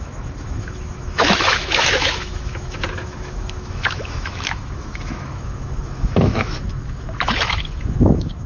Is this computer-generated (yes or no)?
yes